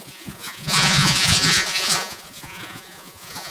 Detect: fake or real fake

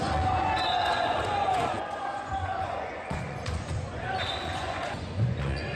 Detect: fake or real fake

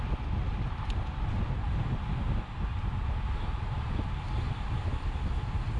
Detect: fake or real real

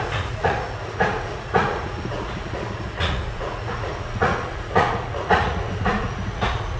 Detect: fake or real fake